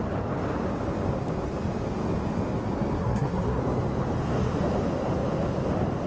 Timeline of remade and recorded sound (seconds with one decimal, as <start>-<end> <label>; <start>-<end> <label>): 0.0-3.0 recorded; 3.0-3.6 remade; 3.6-6.1 recorded